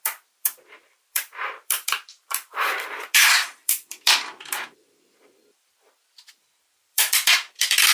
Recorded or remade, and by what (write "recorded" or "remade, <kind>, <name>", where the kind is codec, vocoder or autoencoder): remade, vocoder, BigVGAN v2